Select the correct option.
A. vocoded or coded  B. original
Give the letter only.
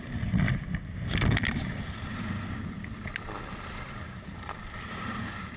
B